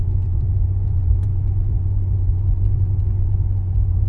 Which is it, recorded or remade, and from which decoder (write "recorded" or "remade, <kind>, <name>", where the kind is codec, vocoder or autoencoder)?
remade, vocoder, Vocos